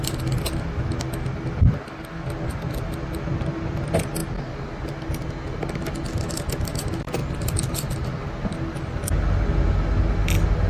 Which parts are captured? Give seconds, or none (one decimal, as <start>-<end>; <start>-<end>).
0.0-10.7